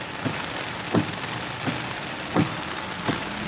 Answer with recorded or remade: recorded